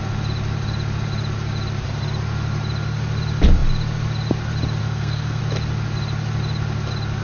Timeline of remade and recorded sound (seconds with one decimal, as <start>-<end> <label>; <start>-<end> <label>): 0.0-4.8 recorded; 4.8-5.4 remade; 5.4-7.2 recorded